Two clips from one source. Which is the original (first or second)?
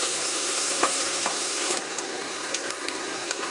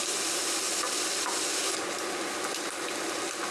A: second